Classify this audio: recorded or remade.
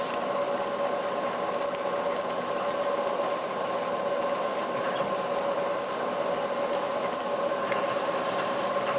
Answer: recorded